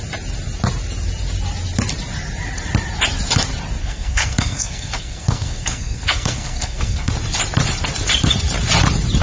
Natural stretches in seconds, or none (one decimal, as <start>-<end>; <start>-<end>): 0.0-3.8; 7.1-9.2